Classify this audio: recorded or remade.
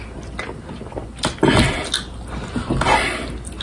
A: recorded